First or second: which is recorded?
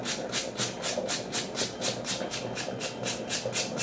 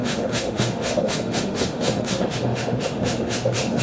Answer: first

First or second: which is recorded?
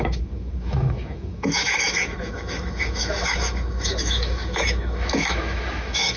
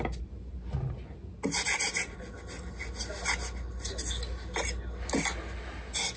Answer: second